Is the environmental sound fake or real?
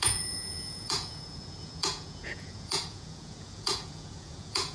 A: fake